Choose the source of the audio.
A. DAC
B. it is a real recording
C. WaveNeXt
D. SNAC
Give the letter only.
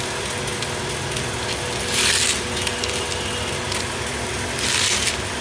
B